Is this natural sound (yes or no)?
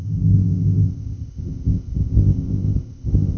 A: no